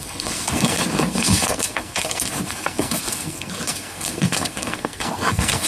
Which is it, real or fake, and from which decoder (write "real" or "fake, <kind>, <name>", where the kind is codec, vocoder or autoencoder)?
fake, codec, SNAC